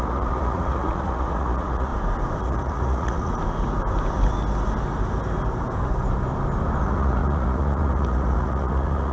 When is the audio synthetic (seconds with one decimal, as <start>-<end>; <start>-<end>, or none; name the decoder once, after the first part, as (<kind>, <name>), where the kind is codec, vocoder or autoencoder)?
0.0-1.9 (vocoder, Vocos); 2.4-3.3; 6.8-9.1